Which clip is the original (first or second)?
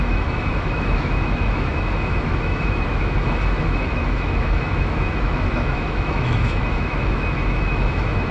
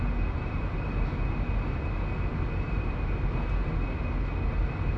second